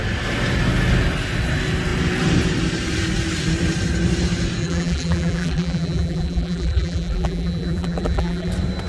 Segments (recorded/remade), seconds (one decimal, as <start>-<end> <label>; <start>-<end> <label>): 0.0-4.6 recorded; 4.6-8.5 remade; 8.5-8.9 recorded